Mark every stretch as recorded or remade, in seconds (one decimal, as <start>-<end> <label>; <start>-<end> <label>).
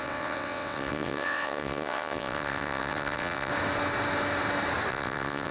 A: 0.0-3.5 remade; 3.5-4.9 recorded; 4.9-5.5 remade